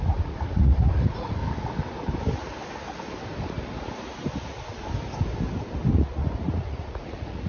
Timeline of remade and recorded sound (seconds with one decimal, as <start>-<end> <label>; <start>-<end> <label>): 0.0-1.4 remade; 1.4-5.9 recorded; 5.9-7.5 remade